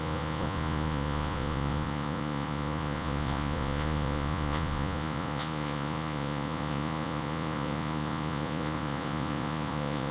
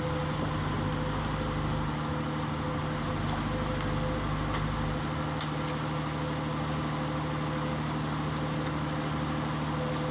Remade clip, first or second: first